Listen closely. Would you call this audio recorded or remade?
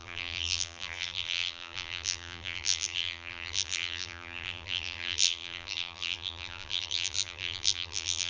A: remade